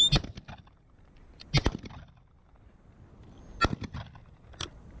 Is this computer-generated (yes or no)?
no